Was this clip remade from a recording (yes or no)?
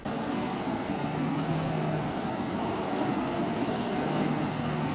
yes